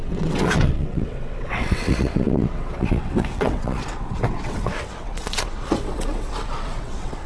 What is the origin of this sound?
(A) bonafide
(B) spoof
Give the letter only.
B